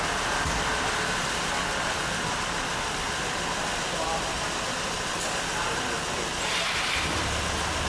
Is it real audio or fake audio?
real